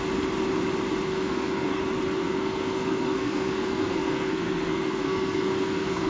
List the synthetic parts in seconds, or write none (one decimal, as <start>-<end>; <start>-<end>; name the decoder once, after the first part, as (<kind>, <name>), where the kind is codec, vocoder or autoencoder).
1.1-1.8 (codec, SNAC); 2.2-6.1

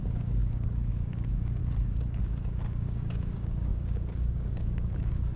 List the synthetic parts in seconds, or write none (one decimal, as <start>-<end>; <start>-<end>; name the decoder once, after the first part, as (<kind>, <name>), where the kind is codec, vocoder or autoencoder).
0.0-1.6 (codec, DAC); 2.2-5.4

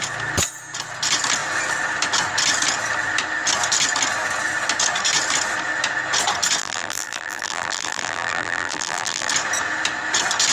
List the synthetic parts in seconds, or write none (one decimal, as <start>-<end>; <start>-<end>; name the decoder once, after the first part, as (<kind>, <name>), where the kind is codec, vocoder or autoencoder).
6.6-9.3 (vocoder, BigVGAN v2)

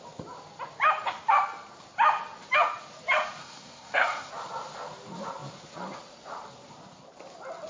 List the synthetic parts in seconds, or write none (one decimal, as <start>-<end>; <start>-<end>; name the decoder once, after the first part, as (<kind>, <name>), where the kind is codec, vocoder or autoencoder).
3.4-4.3 (codec, SNAC)

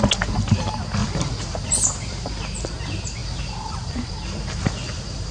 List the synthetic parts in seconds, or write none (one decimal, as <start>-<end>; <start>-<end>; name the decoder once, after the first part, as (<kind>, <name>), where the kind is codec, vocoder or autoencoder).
none

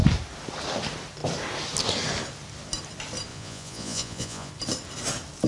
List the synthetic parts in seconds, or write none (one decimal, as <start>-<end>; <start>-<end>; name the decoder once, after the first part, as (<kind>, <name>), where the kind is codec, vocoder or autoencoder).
3.3-4.5 (vocoder, Vocos)

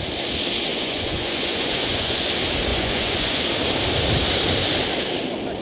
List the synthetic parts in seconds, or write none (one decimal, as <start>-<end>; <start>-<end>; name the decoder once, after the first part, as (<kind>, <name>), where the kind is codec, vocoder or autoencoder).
0.7-2.3 (vocoder, Vocos); 2.7-3.4